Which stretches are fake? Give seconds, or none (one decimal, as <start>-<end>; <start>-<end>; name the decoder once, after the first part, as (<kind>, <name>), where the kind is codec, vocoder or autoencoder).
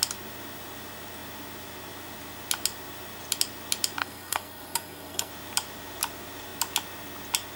4.0-5.3 (codec, SNAC)